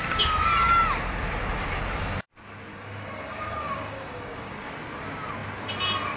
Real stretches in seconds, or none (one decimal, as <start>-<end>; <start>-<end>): 0.0-2.7; 4.7-6.2